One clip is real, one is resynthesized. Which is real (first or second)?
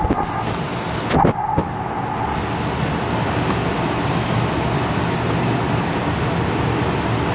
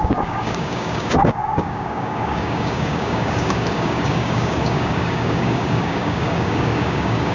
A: first